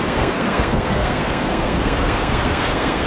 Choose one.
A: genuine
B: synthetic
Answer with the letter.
B